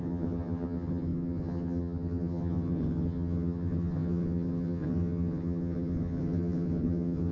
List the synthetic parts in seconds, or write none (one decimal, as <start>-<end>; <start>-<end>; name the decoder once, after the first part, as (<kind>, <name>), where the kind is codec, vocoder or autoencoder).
0.0-7.3 (vocoder, HiFi-GAN)